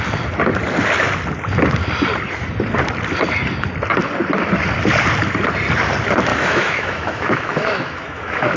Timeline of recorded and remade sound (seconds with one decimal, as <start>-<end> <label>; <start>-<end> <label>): 0.0-6.3 recorded; 6.3-8.6 remade